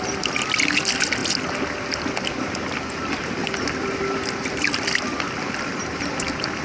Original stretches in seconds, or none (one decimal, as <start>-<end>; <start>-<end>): 0.0-6.6